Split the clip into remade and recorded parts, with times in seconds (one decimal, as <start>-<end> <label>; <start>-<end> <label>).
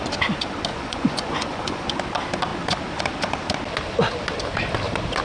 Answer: 0.0-0.7 recorded; 0.7-1.9 remade; 1.9-5.2 recorded